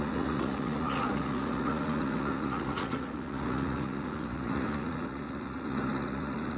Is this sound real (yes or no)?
no